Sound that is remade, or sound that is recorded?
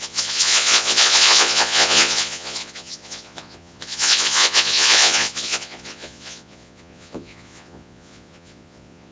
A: remade